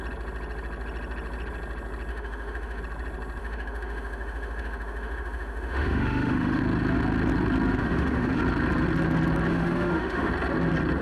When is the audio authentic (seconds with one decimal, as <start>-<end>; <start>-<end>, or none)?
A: 0.0-2.1; 2.8-3.4; 6.6-7.8; 8.4-9.5; 10.3-11.0